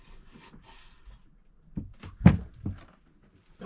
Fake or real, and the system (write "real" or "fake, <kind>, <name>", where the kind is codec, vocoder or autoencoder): real